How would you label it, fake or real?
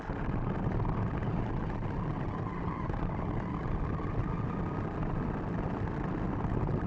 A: real